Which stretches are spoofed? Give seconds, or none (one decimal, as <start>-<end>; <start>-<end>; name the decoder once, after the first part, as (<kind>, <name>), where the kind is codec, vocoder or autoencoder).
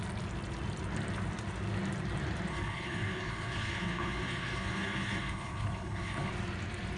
2.5-6.3 (codec, HILCodec)